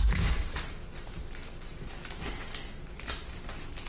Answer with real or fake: real